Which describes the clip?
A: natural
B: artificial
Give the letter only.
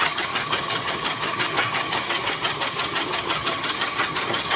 B